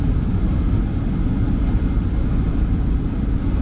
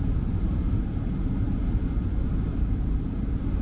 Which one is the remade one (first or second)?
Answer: second